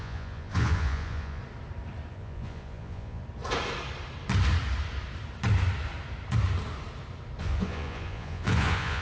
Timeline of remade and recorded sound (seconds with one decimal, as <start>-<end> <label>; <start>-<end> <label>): 0.0-1.4 remade; 1.4-2.1 recorded; 2.1-3.2 remade; 3.2-7.4 recorded; 7.4-9.0 remade